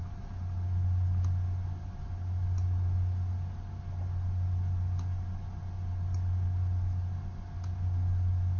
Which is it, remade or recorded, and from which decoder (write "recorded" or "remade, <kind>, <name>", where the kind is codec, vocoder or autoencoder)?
recorded